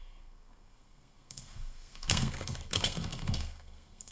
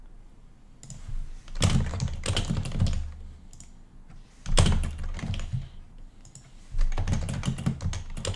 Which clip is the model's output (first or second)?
first